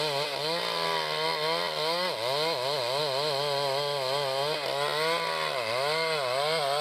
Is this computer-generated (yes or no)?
no